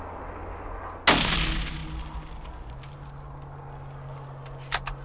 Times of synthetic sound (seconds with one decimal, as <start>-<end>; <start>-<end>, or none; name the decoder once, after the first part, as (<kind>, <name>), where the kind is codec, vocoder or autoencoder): none